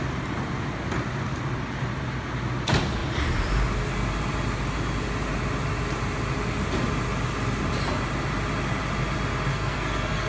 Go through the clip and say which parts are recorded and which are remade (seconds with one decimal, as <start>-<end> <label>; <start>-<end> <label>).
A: 0.0-9.5 recorded; 9.5-10.3 remade